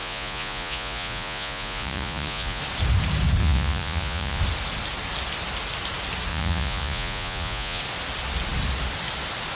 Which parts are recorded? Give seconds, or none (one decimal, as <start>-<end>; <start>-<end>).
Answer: 2.6-3.4; 4.4-6.3; 7.8-9.5